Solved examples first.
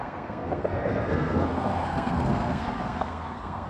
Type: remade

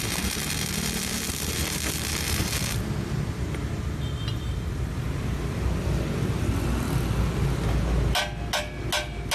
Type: recorded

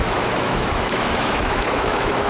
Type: remade